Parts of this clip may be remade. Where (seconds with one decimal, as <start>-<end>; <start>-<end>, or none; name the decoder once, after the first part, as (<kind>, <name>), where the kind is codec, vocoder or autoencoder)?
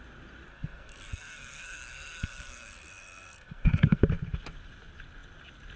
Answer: 0.5-4.0 (codec, SNAC)